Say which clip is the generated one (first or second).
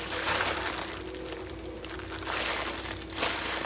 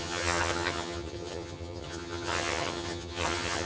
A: second